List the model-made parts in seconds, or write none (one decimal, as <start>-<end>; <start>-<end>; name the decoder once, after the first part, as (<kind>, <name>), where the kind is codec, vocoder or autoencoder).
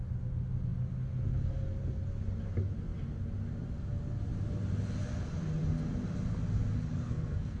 6.9-7.6 (codec, SNAC)